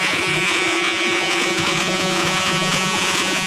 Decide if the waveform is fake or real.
fake